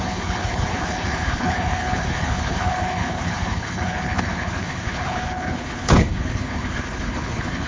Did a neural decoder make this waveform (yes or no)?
yes